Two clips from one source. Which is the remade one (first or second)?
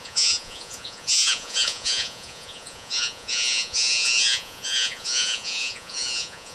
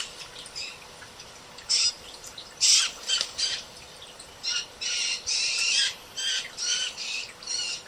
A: first